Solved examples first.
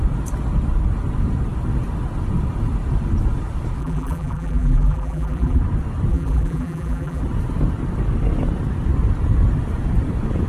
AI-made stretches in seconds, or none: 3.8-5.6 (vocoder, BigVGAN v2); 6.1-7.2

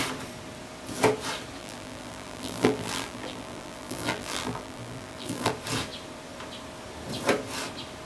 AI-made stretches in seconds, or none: 1.6-5.5 (vocoder, BigVGAN v2)

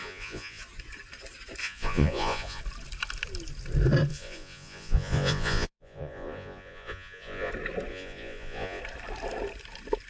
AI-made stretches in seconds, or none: 0.0-0.6 (vocoder, Vocos); 1.6-2.6; 4.1-7.5; 7.9-8.8

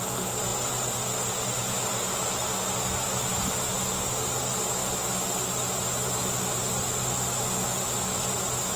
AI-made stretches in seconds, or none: none